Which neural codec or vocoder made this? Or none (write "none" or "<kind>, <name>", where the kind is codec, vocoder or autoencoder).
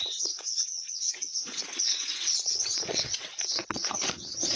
vocoder, WaveNeXt